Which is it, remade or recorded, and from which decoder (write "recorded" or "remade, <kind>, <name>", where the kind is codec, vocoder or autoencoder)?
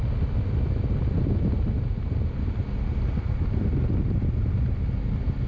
recorded